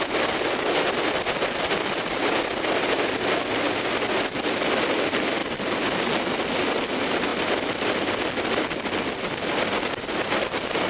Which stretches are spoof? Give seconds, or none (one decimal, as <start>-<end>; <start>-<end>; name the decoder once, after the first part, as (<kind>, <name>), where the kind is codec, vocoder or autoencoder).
none